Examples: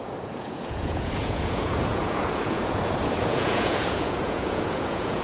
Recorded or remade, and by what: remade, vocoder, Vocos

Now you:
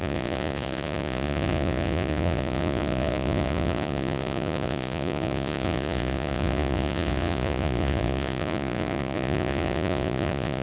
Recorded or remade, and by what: remade, vocoder, Vocos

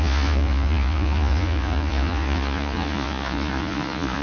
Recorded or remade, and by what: remade, vocoder, Vocos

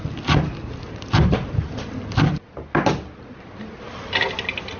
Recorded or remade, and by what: recorded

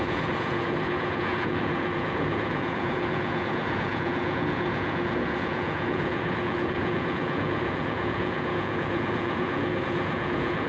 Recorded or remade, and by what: remade, vocoder, Vocos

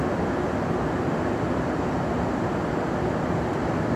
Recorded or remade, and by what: recorded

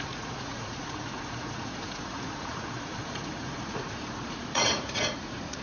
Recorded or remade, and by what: remade, vocoder, Vocos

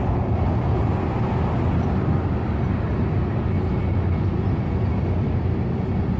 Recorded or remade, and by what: recorded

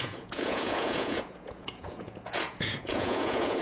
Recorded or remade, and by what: remade, vocoder, Vocos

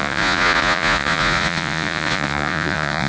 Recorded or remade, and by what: remade, vocoder, Vocos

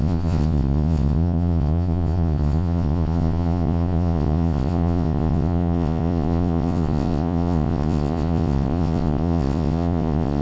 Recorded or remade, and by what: remade, vocoder, Vocos